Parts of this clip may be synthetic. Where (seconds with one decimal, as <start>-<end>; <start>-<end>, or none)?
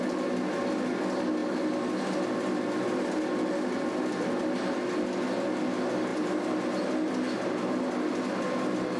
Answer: none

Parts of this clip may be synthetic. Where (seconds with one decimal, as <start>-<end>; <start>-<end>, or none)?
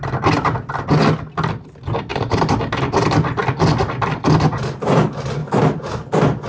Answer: 2.1-2.7; 5.4-5.9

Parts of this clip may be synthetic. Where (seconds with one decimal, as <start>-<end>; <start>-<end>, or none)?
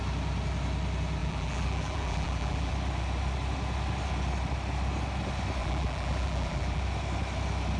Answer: 1.2-2.7; 5.6-6.8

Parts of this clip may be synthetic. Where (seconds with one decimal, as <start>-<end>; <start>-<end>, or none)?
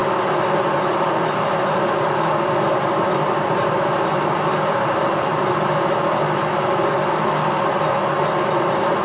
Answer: 0.0-5.3; 7.0-9.0